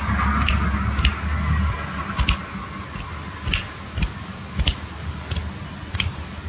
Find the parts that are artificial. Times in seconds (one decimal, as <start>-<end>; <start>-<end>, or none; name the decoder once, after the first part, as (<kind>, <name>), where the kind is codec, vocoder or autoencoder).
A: none